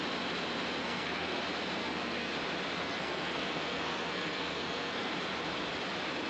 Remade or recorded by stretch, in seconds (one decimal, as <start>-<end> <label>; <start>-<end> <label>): 0.0-0.8 recorded; 0.8-1.4 remade; 1.4-1.8 recorded; 1.8-2.3 remade; 2.3-2.8 recorded; 2.8-5.1 remade; 5.1-6.3 recorded